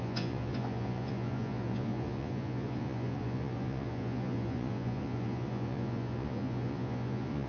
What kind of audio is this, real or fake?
fake